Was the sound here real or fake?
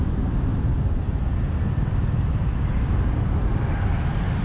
real